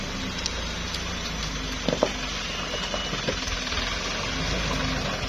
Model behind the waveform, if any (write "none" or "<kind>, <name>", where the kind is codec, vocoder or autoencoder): none